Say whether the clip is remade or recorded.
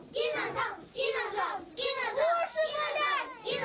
recorded